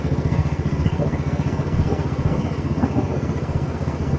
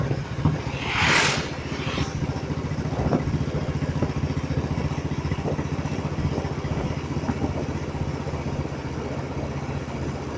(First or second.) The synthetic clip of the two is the first